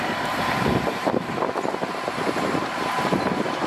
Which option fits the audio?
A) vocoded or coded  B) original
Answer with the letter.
A